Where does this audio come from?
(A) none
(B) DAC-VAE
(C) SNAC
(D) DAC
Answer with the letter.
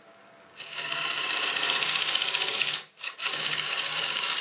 D